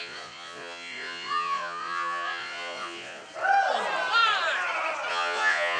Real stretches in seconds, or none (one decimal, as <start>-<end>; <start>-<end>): 3.2-5.1